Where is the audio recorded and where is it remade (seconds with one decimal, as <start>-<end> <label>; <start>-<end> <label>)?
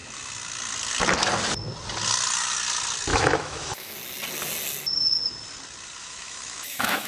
0.0-3.1 recorded; 3.1-3.9 remade; 3.9-6.0 recorded; 6.0-7.1 remade